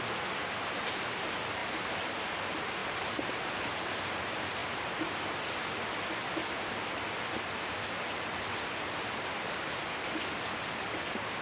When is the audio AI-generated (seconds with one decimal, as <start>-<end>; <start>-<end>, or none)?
none